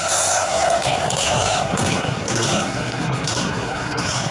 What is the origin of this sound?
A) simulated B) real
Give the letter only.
A